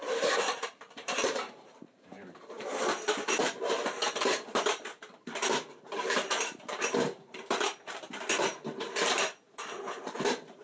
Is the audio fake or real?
fake